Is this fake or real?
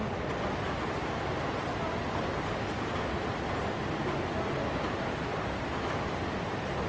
real